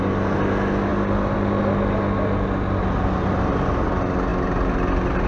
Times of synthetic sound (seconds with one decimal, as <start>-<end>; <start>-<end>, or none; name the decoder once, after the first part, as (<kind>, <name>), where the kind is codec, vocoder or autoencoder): none